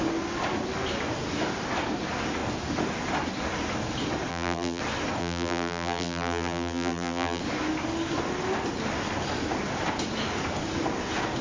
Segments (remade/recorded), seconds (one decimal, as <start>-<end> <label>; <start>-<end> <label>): 0.0-4.3 recorded; 4.3-4.8 remade; 4.8-5.2 recorded; 5.2-7.4 remade; 7.4-11.4 recorded